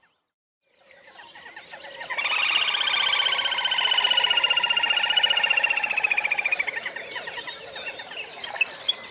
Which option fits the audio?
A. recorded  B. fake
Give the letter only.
A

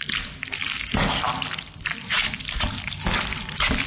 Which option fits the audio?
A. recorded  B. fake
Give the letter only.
A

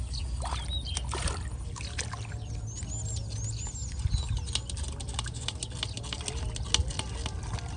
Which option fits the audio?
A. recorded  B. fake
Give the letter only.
A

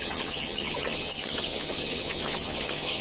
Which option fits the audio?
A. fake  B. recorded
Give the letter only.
A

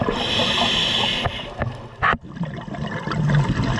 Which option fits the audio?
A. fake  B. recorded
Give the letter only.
B